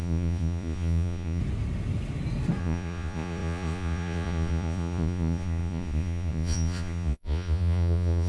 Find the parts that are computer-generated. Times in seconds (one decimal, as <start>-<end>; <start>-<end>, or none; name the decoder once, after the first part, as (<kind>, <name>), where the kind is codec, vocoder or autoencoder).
0.0-1.4 (vocoder, Vocos); 2.6-8.3